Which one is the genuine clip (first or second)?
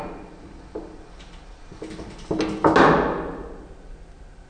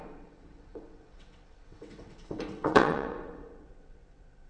first